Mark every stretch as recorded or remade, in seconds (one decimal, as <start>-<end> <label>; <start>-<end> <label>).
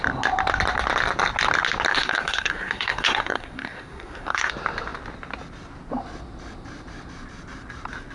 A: 0.0-1.9 recorded; 1.9-4.5 remade; 4.5-8.1 recorded